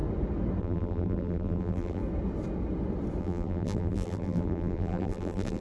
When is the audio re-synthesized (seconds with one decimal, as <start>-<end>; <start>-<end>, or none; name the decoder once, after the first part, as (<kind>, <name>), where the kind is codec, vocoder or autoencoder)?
0.6-2.0 (vocoder, BigVGAN v2); 3.2-5.6